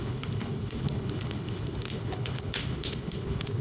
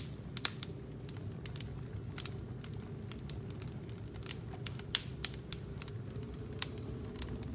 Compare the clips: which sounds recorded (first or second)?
second